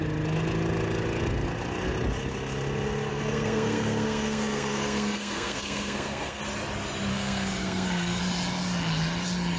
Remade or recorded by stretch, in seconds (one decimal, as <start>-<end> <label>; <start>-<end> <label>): 0.0-3.1 recorded; 3.1-6.4 remade; 6.4-7.1 recorded; 7.1-8.2 remade; 8.2-9.6 recorded